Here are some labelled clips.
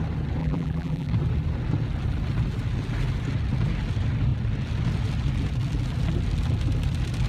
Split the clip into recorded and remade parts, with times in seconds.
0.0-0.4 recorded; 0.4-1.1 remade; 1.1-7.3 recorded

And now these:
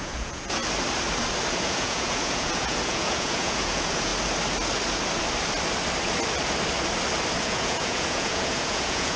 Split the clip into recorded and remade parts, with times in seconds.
0.0-0.6 remade; 0.6-1.5 recorded; 1.5-4.1 remade; 4.1-7.4 recorded; 7.4-9.2 remade

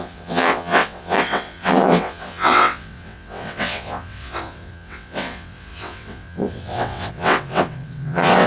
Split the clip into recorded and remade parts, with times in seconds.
0.0-8.5 remade

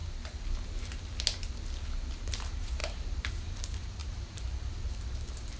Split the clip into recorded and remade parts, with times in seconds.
0.0-2.2 recorded; 2.2-5.6 remade

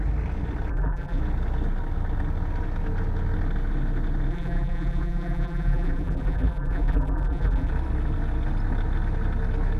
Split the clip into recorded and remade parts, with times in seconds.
0.0-0.7 recorded; 0.7-1.2 remade; 1.2-4.3 recorded; 4.3-7.7 remade; 7.7-9.8 recorded

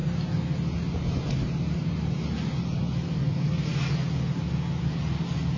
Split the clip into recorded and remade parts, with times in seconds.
0.0-5.6 recorded